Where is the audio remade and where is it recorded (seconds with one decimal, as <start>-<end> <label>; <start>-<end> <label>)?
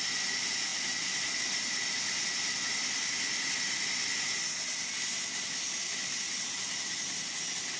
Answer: 0.0-7.8 recorded